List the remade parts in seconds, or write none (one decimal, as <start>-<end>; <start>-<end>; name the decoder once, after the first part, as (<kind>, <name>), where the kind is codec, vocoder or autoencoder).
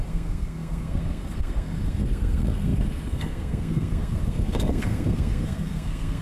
0.0-6.2 (codec, SNAC)